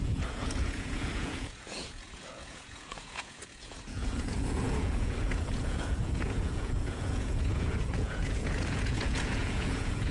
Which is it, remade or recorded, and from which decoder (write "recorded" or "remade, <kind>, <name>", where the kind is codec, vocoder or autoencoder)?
remade, vocoder, Vocos